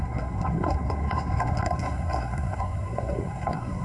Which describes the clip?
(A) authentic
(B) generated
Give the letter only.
B